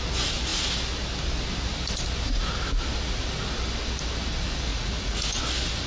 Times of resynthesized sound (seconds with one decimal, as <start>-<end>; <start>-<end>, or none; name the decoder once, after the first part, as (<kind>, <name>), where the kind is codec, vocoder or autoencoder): 4.7-5.4 (vocoder, Vocos)